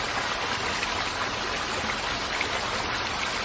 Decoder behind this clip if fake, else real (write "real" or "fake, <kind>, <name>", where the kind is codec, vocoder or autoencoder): real